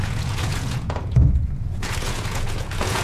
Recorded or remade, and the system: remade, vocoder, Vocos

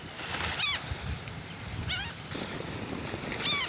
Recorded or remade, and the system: recorded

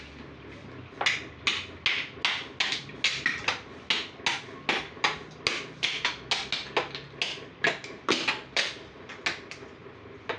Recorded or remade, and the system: recorded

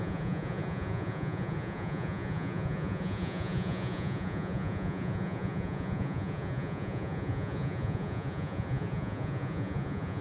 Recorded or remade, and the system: remade, vocoder, Vocos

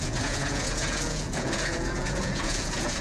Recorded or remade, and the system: remade, vocoder, Vocos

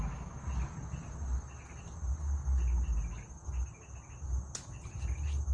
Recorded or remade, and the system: recorded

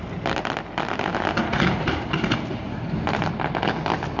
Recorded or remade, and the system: recorded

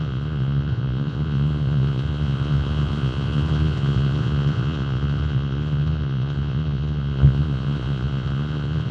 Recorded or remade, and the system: remade, vocoder, Vocos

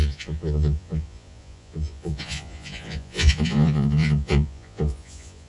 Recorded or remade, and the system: remade, vocoder, Vocos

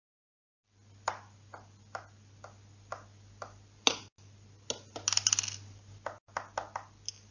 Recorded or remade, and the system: recorded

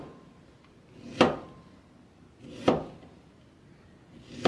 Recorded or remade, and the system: recorded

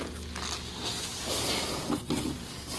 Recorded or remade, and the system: recorded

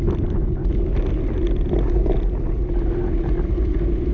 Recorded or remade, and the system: recorded